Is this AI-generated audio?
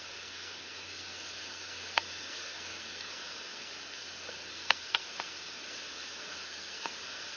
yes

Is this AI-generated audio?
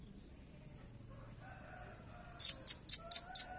no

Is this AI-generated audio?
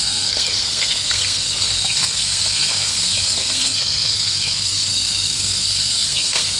yes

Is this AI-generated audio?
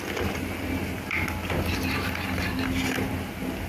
no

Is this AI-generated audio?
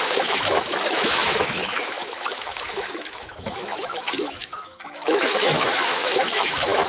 yes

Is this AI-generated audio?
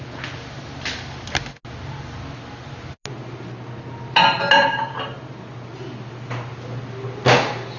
no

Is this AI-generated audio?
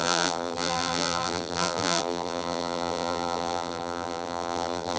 yes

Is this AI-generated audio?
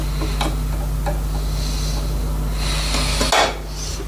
no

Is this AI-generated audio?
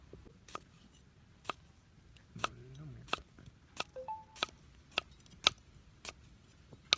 no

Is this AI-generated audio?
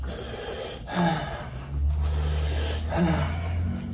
no